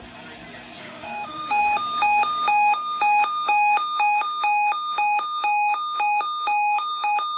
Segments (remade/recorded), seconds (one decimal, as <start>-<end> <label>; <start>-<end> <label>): 0.0-0.8 recorded; 0.8-1.6 remade; 1.6-7.4 recorded